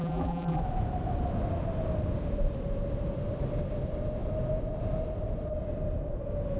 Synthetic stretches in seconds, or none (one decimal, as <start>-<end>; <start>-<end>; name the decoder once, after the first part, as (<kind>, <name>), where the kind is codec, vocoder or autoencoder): 0.0-0.6 (vocoder, BigVGAN v2)